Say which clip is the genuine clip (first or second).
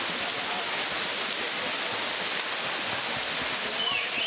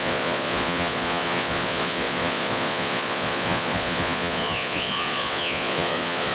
first